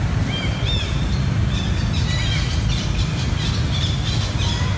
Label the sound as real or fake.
real